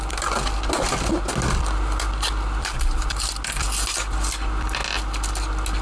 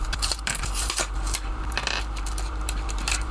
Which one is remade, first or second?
second